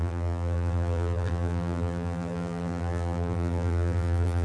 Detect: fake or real fake